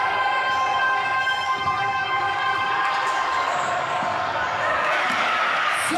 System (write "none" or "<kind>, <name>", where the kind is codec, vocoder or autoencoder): codec, DAC